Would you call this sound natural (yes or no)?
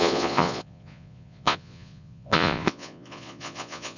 no